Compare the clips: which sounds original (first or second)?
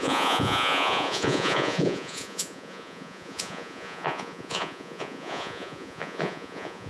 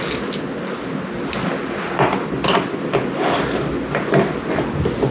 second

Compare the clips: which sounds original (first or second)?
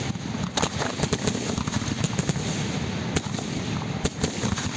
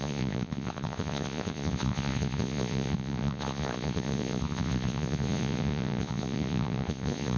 first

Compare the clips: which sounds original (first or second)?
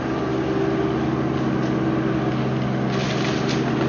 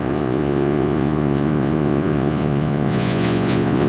first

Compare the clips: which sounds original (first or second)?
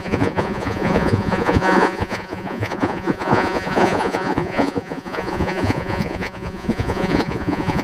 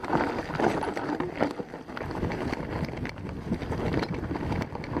second